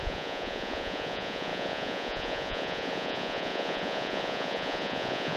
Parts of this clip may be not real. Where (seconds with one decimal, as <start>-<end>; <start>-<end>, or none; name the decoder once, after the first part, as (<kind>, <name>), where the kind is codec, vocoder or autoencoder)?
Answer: 0.0-5.4 (vocoder, Vocos)